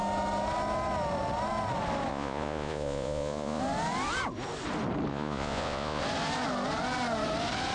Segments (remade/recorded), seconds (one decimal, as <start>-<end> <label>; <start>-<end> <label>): 0.0-2.1 recorded; 2.1-3.6 remade; 3.6-5.1 recorded; 5.1-6.0 remade; 6.0-7.7 recorded